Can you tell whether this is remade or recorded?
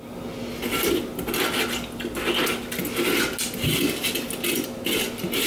recorded